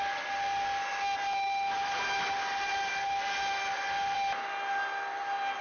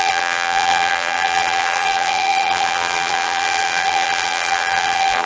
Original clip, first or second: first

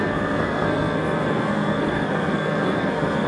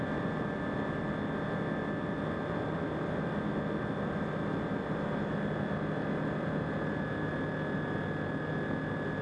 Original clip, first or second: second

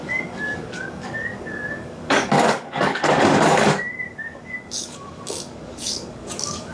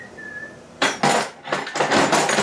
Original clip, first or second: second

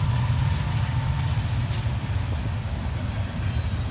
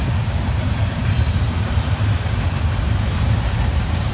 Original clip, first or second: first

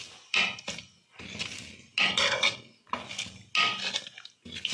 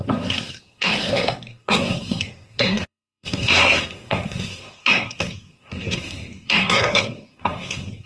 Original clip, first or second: first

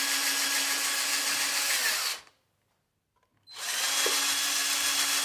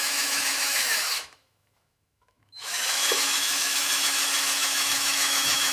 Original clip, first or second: first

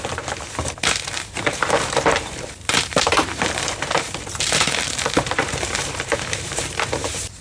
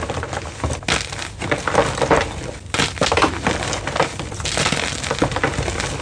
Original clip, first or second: second